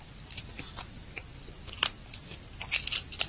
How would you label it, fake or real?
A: fake